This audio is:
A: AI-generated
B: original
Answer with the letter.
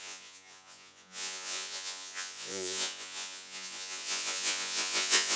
A